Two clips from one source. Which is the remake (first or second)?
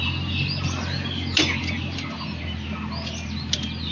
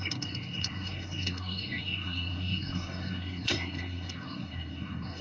second